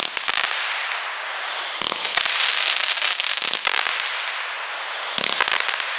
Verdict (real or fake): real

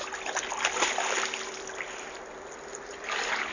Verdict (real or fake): real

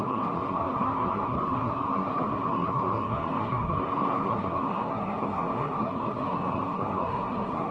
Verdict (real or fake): fake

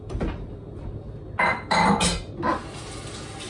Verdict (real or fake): real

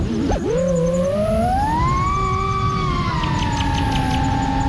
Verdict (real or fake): real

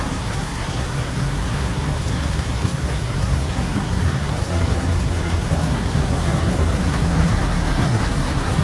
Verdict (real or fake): fake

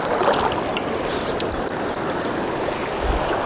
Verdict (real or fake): real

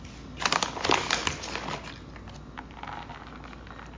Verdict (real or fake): real